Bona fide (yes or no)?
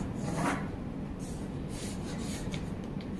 yes